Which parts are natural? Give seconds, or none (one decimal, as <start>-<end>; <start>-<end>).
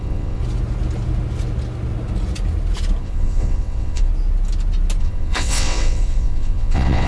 0.4-3.0; 4.1-5.0